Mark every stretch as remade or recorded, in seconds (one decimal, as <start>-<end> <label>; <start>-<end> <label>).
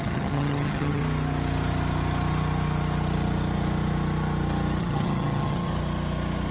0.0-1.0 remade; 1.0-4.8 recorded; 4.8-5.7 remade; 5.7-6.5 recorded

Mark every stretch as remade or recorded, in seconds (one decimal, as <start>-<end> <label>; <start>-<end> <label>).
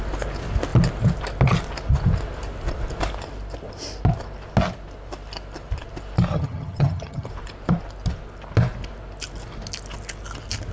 0.0-6.3 recorded; 6.3-7.3 remade; 7.3-10.7 recorded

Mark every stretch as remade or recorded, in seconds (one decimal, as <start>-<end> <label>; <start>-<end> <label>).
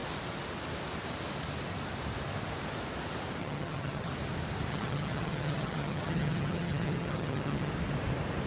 0.0-3.4 recorded; 3.4-4.1 remade; 4.1-4.7 recorded; 4.7-7.7 remade; 7.7-8.5 recorded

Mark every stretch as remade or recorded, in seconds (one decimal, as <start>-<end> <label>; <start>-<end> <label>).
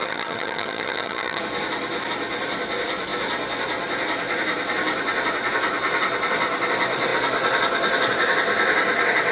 0.0-1.4 remade; 1.4-9.3 recorded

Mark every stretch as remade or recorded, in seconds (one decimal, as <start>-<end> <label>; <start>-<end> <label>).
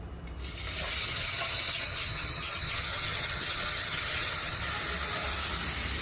0.0-1.0 recorded; 1.0-4.6 remade; 4.6-6.0 recorded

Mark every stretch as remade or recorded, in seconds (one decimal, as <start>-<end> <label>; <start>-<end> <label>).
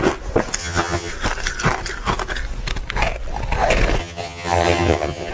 0.0-0.6 recorded; 0.6-1.1 remade; 1.1-4.0 recorded; 4.0-5.3 remade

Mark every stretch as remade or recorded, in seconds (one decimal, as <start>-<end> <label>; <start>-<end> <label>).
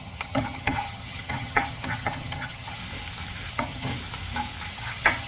0.0-2.8 remade; 2.8-3.5 recorded; 3.5-3.9 remade; 3.9-4.7 recorded; 4.7-5.3 remade